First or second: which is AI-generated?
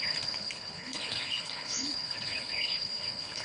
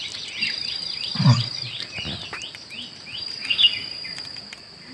first